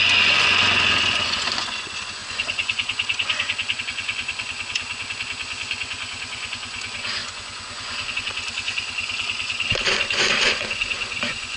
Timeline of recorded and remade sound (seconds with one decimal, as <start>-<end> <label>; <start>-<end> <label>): 0.0-11.6 remade